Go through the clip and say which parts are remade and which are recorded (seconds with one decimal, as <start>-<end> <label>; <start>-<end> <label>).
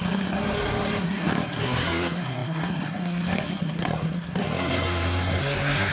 0.0-5.9 remade